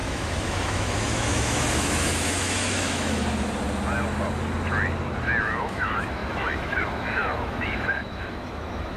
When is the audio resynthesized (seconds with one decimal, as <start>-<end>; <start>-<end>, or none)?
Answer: 0.0-3.2; 5.4-9.0